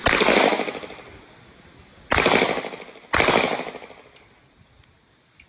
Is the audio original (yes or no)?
yes